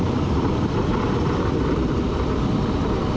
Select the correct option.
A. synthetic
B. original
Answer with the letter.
A